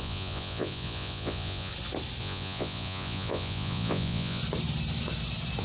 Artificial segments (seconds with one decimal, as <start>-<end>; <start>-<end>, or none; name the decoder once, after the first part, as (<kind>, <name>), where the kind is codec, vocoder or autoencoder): 0.0-1.7 (vocoder, Vocos); 2.2-4.4